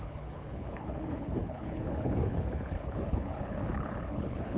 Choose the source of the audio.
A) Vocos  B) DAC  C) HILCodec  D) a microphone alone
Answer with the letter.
C